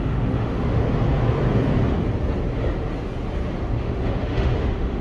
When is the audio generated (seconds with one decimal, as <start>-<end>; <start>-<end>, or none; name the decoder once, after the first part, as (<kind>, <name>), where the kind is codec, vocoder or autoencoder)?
0.0-0.8 (autoencoder, DAC-VAE); 3.8-5.0